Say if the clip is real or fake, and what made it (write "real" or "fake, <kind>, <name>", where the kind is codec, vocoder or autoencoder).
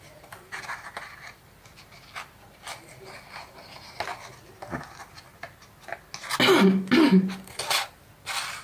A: real